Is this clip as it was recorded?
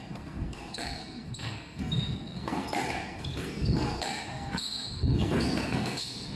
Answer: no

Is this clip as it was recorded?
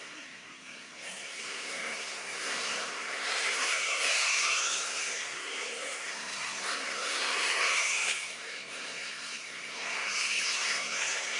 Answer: no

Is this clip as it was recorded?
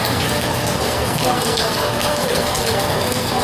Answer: no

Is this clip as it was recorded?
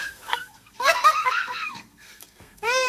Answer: no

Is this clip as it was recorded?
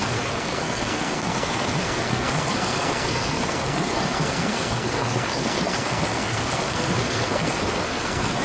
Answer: no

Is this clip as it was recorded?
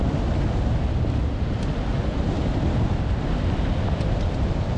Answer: yes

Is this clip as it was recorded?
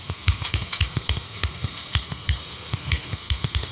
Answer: no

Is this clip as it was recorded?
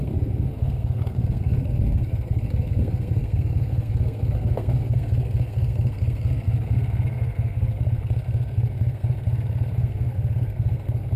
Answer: no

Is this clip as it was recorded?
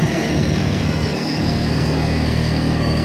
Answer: no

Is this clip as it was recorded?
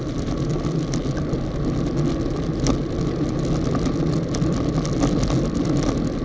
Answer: yes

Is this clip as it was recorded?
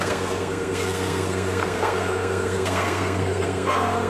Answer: no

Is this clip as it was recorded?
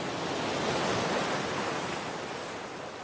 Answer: yes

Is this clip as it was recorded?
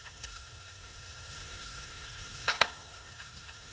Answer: no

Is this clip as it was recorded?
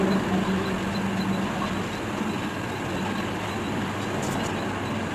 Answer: yes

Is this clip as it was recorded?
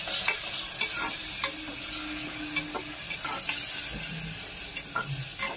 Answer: yes